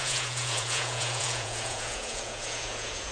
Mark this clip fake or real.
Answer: fake